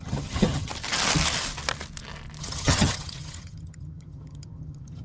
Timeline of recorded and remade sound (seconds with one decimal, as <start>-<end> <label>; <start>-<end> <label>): 0.0-0.7 remade; 0.7-2.4 recorded; 2.4-5.0 remade